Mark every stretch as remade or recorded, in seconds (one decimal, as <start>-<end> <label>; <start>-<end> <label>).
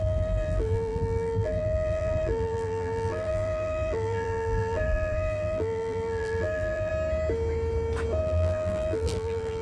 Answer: 0.0-6.9 remade; 6.9-8.2 recorded; 8.2-9.6 remade